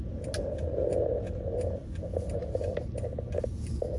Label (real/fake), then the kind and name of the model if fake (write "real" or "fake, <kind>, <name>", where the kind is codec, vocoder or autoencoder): real